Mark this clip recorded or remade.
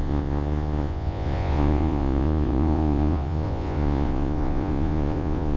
remade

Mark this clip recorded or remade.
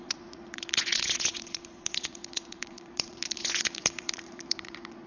remade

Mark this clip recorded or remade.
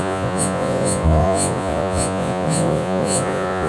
remade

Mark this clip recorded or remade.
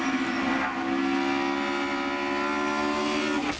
recorded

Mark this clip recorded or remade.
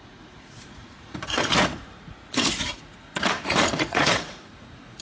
remade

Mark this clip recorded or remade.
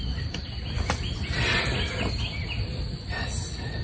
recorded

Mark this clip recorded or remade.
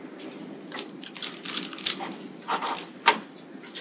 recorded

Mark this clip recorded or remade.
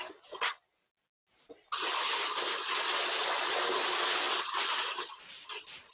recorded